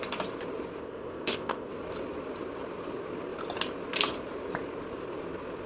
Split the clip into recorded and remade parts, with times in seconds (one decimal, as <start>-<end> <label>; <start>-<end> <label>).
0.0-0.8 recorded; 0.8-1.7 remade; 1.7-5.7 recorded